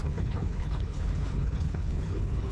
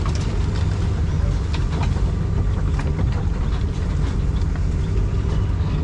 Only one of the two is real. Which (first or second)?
second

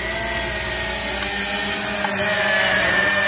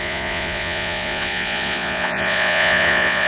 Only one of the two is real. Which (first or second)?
first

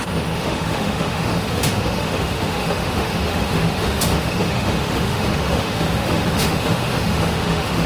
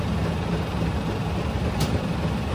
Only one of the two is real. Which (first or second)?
second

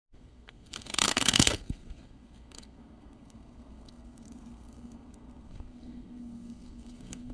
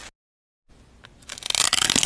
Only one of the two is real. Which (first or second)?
second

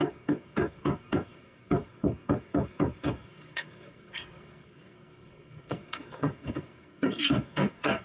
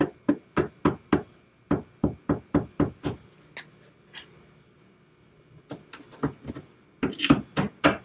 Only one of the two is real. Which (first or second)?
second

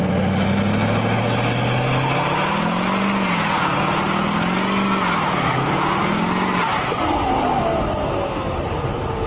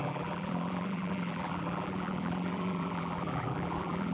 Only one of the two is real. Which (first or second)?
first